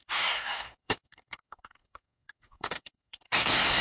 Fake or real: fake